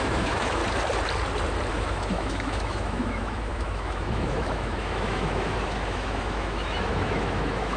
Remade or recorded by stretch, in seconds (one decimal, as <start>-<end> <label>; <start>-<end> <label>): 0.0-0.6 remade; 0.6-1.7 recorded; 1.7-7.8 remade